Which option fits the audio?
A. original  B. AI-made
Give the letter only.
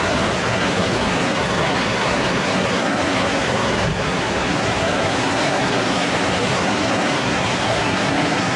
B